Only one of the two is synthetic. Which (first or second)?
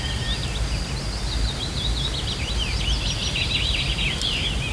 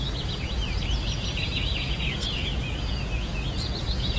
second